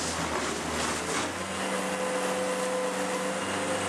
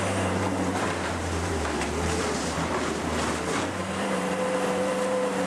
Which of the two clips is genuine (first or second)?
first